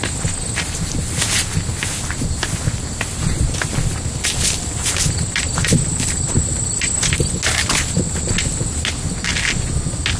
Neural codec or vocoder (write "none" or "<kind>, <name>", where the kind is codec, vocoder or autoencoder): none